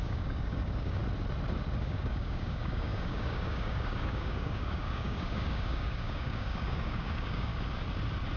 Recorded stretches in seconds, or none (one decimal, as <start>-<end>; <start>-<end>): 1.0-1.8; 7.5-8.4